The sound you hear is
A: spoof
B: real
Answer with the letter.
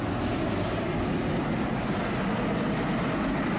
B